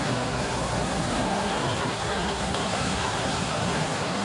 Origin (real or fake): fake